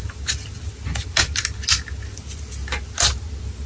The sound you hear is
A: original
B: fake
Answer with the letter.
A